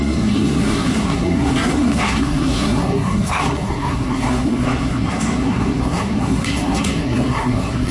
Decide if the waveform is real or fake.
fake